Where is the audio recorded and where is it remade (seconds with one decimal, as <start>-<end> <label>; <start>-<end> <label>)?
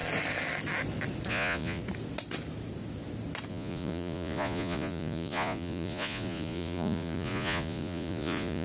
0.0-1.3 recorded; 1.3-1.8 remade; 1.8-3.5 recorded; 3.5-8.6 remade